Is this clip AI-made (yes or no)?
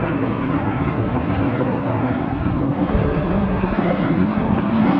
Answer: yes